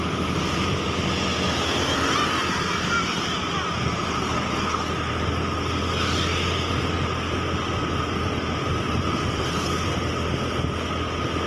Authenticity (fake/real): real